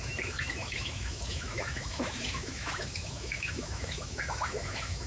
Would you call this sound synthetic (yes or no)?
yes